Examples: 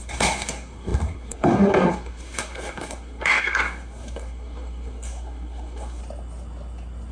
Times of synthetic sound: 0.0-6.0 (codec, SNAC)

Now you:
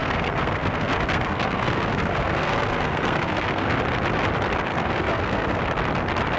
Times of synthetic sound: 0.0-3.8 (codec, SNAC); 4.7-5.6